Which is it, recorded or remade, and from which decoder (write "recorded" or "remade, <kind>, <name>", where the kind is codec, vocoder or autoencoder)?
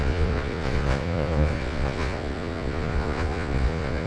remade, vocoder, Vocos